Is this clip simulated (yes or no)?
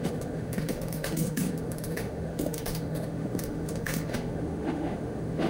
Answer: yes